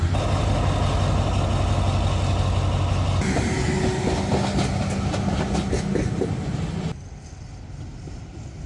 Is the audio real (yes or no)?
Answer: yes